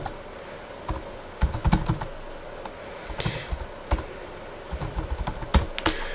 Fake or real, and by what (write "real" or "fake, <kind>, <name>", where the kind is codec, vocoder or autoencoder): real